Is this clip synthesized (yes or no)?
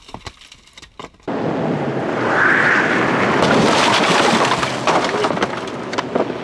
no